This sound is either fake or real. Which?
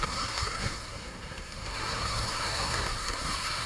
fake